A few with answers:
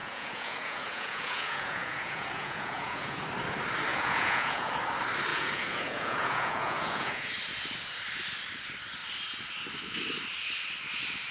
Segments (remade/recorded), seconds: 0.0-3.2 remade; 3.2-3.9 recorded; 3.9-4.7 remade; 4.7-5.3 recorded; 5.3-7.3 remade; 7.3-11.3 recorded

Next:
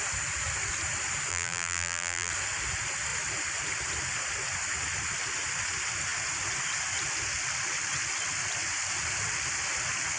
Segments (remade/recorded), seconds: 0.0-1.3 recorded; 1.3-2.3 remade; 2.3-10.2 recorded